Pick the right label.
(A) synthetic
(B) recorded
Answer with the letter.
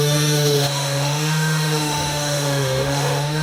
A